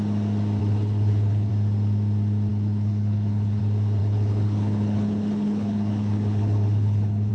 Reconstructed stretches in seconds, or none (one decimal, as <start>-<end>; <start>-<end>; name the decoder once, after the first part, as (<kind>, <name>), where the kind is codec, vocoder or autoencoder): 0.6-1.5 (codec, HILCodec); 2.5-3.6; 4.0-7.3